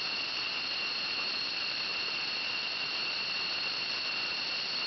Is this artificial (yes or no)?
no